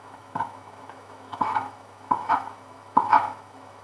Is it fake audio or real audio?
fake